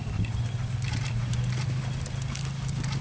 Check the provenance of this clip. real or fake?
real